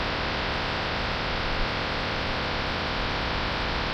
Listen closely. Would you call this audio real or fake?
real